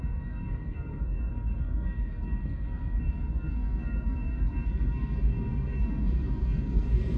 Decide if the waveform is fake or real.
fake